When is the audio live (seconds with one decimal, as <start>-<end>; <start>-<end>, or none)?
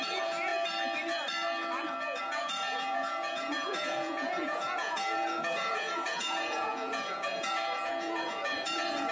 0.5-2.2